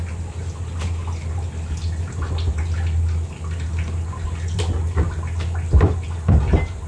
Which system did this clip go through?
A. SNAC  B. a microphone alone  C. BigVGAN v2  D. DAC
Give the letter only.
B